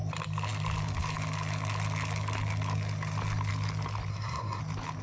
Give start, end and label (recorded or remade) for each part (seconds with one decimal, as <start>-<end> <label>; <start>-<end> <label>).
0.0-4.1 recorded; 4.1-4.6 remade; 4.6-5.0 recorded

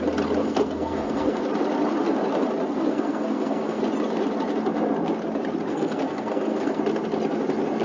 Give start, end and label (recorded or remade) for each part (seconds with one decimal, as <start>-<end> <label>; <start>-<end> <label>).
0.0-0.4 recorded; 0.4-1.4 remade; 1.4-2.9 recorded; 2.9-3.8 remade; 3.8-5.7 recorded; 5.7-6.8 remade; 6.8-7.8 recorded

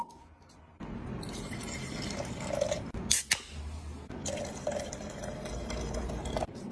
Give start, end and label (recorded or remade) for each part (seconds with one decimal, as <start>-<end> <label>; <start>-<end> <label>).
0.0-6.7 recorded

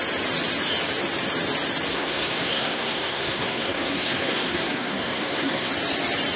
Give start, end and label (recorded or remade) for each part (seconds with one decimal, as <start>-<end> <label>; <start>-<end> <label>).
0.0-1.9 recorded; 1.9-5.7 remade; 5.7-6.4 recorded

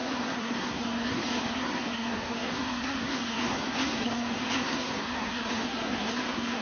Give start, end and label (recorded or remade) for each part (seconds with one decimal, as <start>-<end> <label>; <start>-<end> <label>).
0.0-6.6 remade

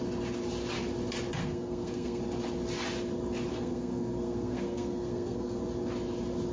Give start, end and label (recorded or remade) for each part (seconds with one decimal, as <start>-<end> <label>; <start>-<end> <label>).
0.0-1.4 recorded; 1.4-2.2 remade; 2.2-3.5 recorded; 3.5-5.6 remade; 5.6-6.5 recorded

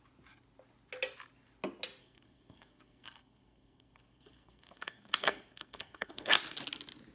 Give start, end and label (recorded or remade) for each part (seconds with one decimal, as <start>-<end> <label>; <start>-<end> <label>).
0.0-2.0 recorded; 2.0-6.3 remade; 6.3-7.1 recorded

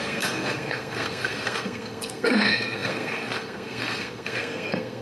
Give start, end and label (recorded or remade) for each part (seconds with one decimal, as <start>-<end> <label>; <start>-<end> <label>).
0.0-5.0 remade